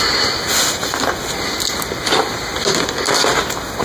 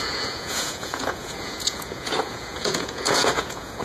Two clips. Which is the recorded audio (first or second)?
first